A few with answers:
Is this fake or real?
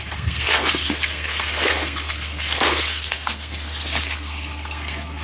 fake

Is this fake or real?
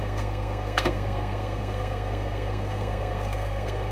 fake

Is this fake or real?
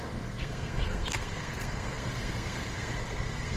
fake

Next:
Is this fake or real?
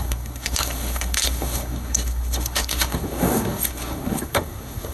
fake